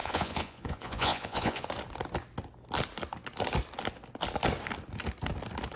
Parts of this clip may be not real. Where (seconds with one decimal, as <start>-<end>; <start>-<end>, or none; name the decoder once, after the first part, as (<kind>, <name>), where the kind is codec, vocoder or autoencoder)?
0.0-1.7 (vocoder, Vocos)